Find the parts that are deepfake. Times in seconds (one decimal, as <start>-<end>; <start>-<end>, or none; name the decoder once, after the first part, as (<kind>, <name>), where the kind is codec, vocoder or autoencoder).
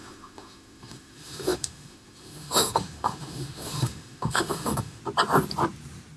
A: 0.0-5.0 (autoencoder, DAC-VAE)